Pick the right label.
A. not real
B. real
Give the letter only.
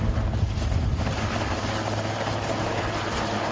B